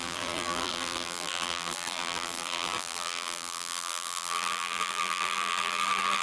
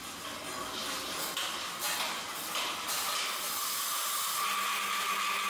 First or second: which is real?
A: second